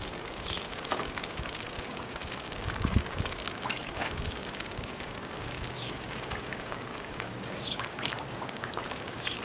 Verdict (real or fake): fake